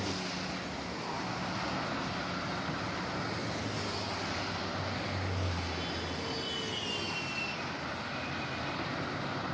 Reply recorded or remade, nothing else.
recorded